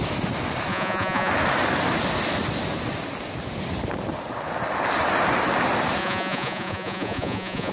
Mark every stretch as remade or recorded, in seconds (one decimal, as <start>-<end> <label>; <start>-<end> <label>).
0.0-0.7 recorded; 0.7-1.3 remade; 1.3-6.0 recorded; 6.0-7.7 remade